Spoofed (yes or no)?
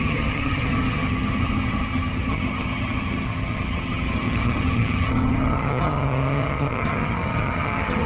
yes